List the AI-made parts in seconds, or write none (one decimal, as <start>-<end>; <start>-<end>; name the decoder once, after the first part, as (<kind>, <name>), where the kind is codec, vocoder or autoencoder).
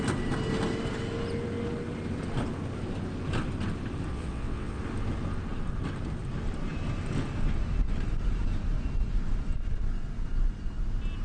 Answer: 4.1-4.8 (vocoder, WaveNeXt)